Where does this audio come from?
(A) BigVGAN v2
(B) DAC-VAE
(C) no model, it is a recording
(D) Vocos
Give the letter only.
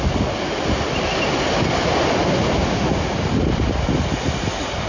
C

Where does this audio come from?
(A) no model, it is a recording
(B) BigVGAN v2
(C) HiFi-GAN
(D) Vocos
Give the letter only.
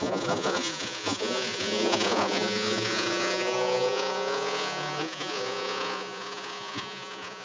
D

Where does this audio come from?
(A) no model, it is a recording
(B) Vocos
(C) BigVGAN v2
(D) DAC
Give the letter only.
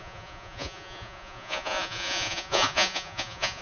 B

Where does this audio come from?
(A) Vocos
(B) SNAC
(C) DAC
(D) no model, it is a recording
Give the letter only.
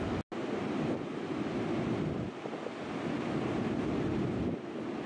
D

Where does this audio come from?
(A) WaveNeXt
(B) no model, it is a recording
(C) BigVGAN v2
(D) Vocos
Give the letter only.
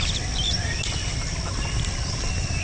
B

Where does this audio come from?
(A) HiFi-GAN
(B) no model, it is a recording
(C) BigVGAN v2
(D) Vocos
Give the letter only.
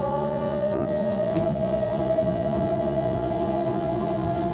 D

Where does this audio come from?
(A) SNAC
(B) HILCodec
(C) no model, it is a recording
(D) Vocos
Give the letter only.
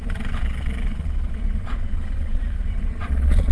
D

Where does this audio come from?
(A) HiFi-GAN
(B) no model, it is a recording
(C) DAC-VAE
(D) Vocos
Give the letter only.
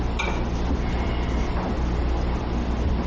B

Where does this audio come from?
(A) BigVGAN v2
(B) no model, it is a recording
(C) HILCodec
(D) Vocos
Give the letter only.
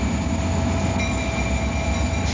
B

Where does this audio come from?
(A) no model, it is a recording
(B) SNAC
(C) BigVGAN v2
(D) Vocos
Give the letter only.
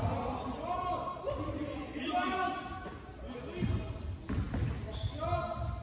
A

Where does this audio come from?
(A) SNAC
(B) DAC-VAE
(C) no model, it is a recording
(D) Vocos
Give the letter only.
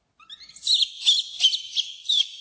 C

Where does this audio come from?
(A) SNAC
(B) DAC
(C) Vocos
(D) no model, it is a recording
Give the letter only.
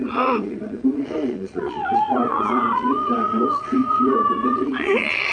C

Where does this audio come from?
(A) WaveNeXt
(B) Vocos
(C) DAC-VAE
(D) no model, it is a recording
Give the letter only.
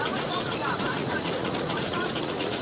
B